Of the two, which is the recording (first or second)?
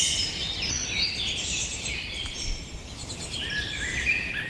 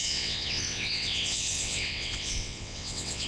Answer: first